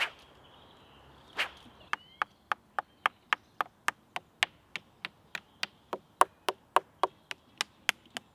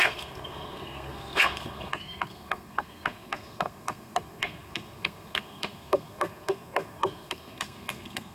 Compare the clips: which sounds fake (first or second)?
second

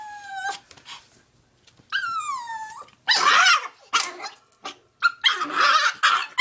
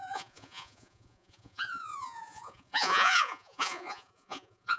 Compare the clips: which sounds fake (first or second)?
second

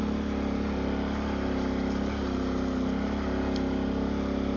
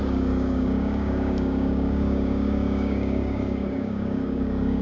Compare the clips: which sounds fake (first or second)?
second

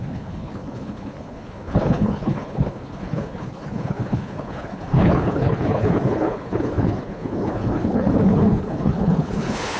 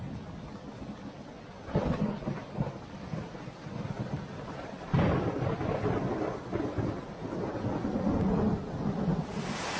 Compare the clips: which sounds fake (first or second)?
first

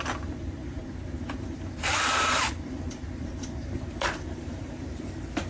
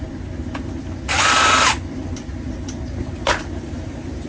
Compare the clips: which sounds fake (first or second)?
first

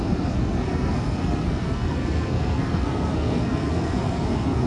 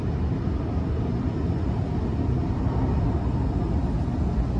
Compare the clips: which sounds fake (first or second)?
first